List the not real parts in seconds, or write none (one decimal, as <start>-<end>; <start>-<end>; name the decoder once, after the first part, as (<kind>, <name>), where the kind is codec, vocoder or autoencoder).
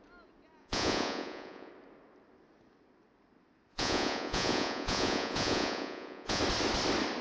0.6-1.7 (vocoder, Vocos); 3.7-6.4